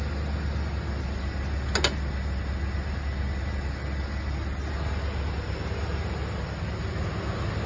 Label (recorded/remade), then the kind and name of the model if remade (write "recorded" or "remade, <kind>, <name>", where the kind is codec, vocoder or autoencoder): recorded